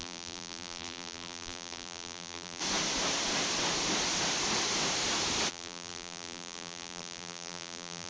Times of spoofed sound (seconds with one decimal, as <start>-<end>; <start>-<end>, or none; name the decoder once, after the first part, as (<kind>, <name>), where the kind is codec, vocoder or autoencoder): 0.0-2.6 (vocoder, BigVGAN v2); 5.5-8.1